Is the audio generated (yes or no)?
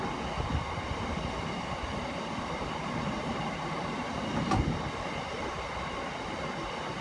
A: yes